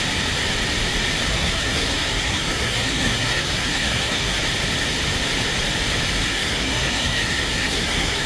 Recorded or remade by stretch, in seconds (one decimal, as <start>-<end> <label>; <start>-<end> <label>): 0.0-1.3 recorded; 1.3-4.4 remade; 4.4-6.2 recorded; 6.2-8.3 remade